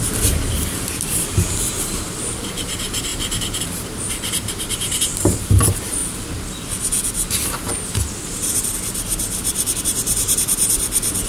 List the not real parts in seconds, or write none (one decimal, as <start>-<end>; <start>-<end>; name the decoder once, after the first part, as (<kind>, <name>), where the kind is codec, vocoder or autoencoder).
0.0-6.0 (vocoder, BigVGAN v2); 9.8-11.3

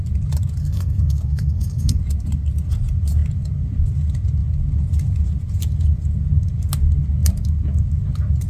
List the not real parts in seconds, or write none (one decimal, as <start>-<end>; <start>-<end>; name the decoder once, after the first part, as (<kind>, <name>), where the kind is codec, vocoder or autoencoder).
0.6-2.0 (codec, SNAC)